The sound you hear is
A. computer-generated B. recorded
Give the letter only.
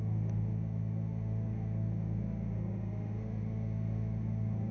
A